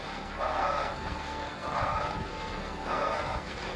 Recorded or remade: remade